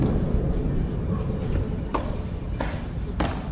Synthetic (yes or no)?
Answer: no